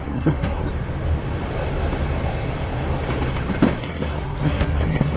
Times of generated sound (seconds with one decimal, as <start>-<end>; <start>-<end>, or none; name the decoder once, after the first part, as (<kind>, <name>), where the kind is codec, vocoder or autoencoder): 0.0-0.7 (codec, SNAC); 3.8-5.2